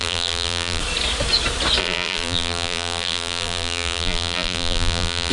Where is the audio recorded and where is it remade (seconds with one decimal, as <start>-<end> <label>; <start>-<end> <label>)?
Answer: 0.0-0.8 remade; 0.8-1.8 recorded; 1.8-5.3 remade